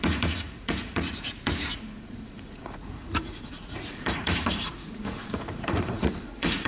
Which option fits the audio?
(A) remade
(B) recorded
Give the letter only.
A